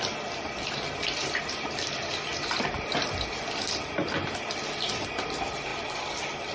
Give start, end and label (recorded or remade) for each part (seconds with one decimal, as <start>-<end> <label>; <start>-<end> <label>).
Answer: 0.0-2.3 recorded; 2.3-3.3 remade; 3.3-6.5 recorded